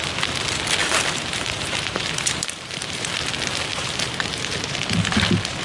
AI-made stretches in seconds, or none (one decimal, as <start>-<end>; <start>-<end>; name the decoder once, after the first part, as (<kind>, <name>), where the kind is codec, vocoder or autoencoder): 0.8-3.1 (vocoder, BigVGAN v2); 3.7-5.0